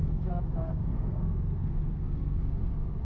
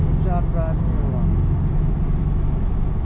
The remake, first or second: first